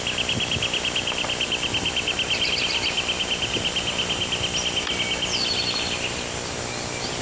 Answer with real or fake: real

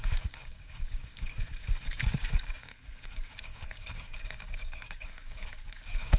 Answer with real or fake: fake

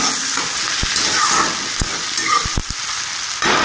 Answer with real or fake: real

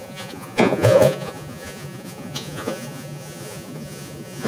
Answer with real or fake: fake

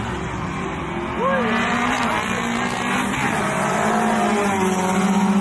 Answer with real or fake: real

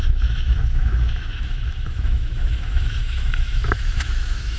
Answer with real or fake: fake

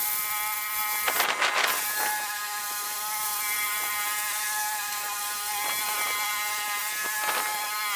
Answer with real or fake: real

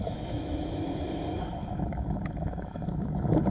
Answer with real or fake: fake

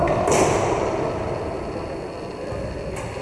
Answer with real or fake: real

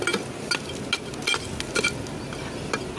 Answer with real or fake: real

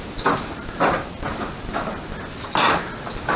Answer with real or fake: real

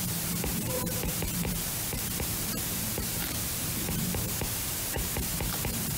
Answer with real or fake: fake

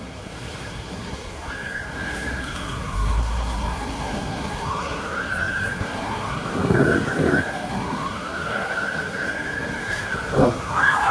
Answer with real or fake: fake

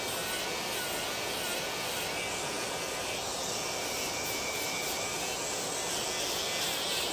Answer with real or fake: real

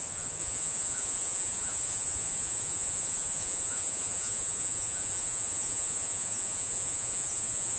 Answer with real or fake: fake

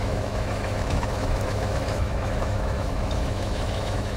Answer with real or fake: fake